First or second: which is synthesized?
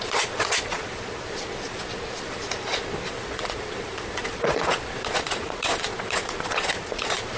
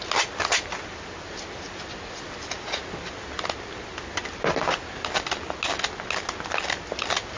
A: first